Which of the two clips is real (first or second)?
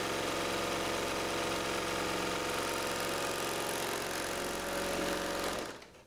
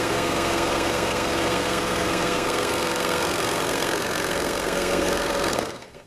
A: first